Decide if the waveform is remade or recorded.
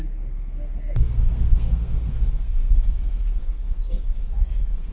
remade